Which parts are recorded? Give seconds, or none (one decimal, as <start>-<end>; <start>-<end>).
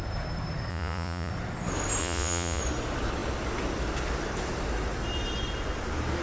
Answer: 0.0-0.7; 1.3-2.0; 2.6-6.2